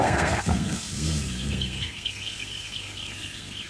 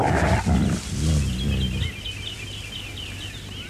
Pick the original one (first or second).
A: second